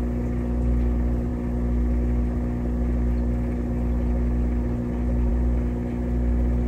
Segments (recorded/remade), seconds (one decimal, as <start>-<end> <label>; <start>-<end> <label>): 0.0-6.7 recorded